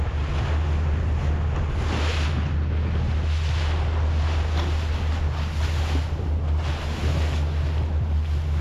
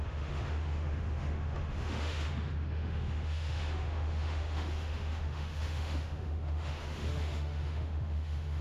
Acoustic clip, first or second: first